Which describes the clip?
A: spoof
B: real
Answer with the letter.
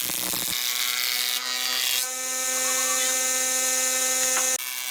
B